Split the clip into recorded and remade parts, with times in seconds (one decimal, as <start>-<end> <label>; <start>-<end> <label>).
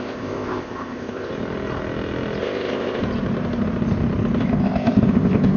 0.0-1.3 remade; 1.3-2.4 recorded; 2.4-3.0 remade; 3.0-4.4 recorded; 4.4-5.6 remade